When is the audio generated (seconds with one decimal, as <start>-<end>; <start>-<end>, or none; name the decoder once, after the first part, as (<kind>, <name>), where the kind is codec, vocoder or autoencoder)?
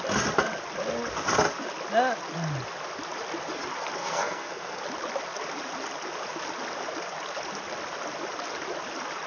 4.0-4.8 (codec, SNAC)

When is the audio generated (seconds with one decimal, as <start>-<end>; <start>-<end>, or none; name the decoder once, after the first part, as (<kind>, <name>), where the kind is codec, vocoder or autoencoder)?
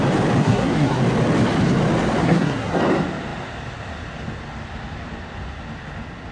0.4-1.0 (codec, SNAC); 2.2-2.8